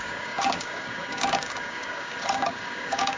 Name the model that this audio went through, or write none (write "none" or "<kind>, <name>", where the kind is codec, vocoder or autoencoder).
codec, DAC